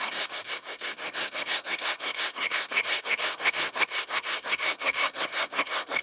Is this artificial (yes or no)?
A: yes